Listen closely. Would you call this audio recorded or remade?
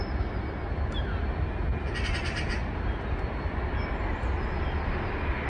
recorded